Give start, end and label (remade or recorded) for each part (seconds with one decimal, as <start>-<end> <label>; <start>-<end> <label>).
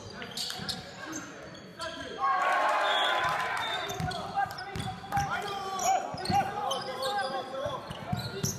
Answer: 0.0-8.6 remade